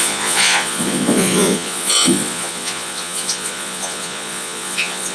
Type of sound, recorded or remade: remade